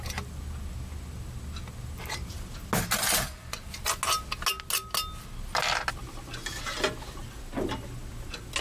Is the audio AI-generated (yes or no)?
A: no